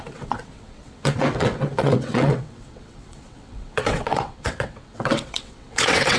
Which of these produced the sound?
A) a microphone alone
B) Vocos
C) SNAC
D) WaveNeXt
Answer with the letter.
D